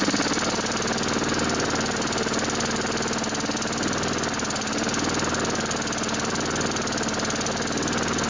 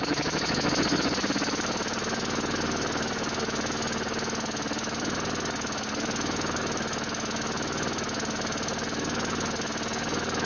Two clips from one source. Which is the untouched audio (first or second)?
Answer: first